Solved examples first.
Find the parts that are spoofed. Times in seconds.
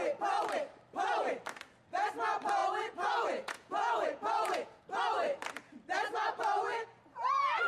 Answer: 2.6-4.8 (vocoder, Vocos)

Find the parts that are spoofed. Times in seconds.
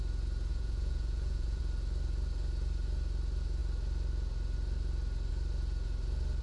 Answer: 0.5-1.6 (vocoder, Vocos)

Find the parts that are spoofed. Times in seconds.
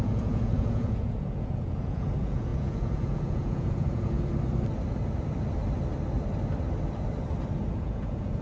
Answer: 0.0-4.3 (vocoder, Vocos); 7.7-8.4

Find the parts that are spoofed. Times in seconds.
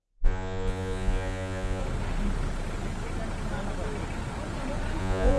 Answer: 0.0-1.8 (vocoder, Vocos); 5.0-5.4